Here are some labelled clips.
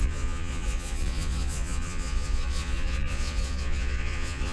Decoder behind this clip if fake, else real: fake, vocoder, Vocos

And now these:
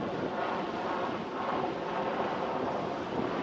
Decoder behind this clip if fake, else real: real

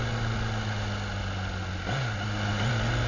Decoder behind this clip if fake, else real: real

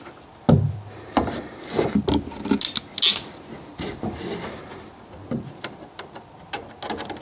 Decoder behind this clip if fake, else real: real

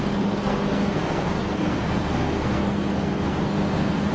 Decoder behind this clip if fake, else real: fake, codec, SNAC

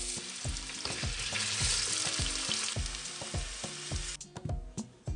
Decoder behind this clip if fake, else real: real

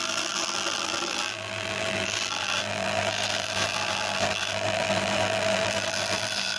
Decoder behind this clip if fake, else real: fake, vocoder, BigVGAN v2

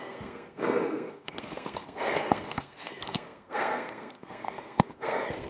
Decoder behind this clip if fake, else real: fake, codec, SNAC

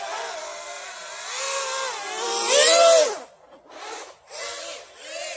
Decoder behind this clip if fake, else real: real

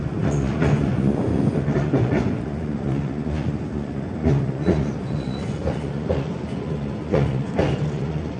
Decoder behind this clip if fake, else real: fake, vocoder, Vocos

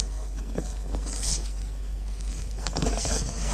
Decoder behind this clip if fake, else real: fake, codec, SNAC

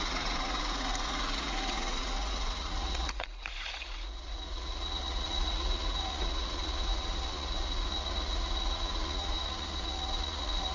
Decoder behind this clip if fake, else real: fake, vocoder, Vocos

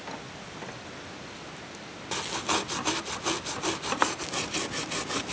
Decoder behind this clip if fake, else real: real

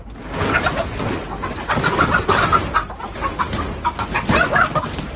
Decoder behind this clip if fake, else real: real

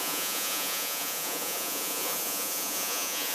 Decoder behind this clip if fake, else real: fake, vocoder, Vocos